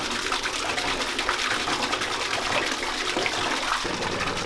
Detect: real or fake real